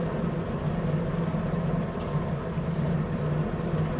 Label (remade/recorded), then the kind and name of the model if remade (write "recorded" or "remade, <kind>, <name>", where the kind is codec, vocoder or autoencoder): recorded